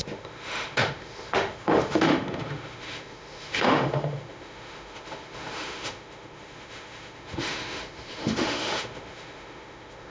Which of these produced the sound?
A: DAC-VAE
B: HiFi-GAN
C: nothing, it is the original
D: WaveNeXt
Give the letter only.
A